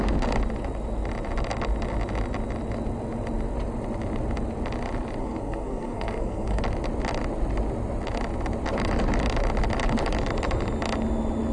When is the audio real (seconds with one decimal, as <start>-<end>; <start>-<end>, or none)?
0.0-5.2; 6.6-11.5